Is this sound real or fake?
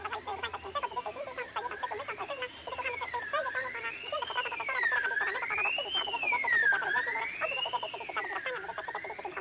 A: fake